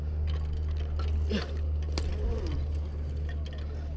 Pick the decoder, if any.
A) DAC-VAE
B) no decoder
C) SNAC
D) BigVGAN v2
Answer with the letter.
B